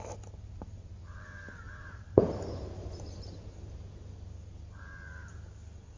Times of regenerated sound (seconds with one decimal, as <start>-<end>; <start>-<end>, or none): 1.8-4.8